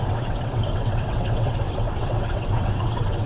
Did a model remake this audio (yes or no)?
yes